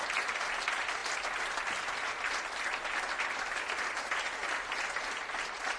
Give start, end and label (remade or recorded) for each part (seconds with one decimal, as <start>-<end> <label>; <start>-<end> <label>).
0.0-5.8 recorded